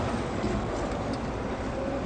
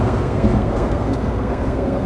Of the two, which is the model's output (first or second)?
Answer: second